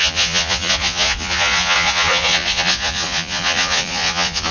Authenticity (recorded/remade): remade